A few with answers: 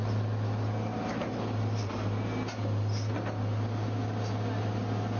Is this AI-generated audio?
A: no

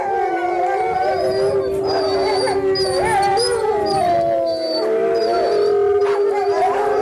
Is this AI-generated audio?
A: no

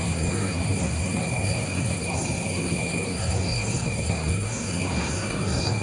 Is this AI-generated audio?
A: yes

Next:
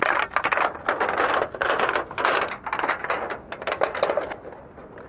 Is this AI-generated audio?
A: no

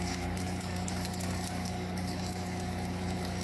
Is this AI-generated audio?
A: yes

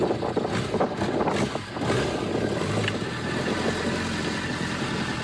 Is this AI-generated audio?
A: no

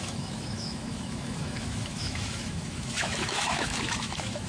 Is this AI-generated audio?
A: yes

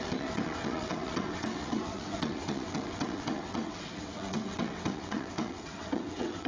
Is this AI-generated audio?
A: yes